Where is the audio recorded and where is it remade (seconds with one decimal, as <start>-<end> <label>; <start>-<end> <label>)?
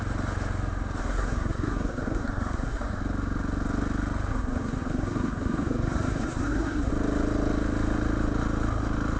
0.0-1.0 recorded; 1.0-3.0 remade; 3.0-4.3 recorded; 4.3-6.9 remade; 6.9-9.2 recorded